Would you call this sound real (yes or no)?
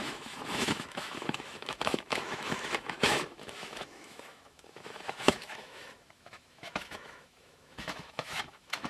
no